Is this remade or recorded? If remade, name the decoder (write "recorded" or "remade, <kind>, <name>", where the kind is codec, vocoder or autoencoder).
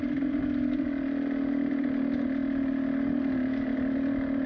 recorded